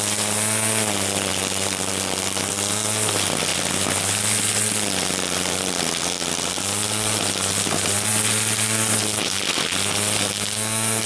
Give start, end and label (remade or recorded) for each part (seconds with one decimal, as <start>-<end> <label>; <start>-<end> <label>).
0.0-11.1 recorded